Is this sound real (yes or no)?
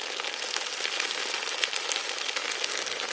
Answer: yes